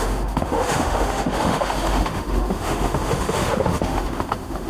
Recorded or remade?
remade